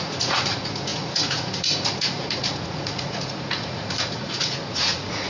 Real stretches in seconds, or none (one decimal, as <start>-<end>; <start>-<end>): none